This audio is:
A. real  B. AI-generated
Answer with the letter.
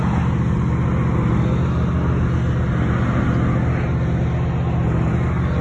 A